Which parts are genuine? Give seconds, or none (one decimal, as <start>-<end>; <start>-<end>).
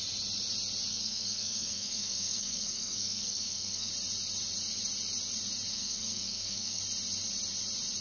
0.0-0.9; 3.9-5.7; 6.8-8.0